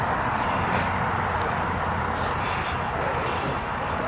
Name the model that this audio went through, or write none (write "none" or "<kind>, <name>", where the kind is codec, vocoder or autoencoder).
none